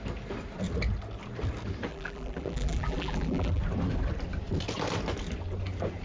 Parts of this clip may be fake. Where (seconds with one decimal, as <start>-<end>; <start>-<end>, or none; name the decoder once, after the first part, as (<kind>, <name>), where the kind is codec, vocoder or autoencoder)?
1.9-3.6 (vocoder, BigVGAN v2)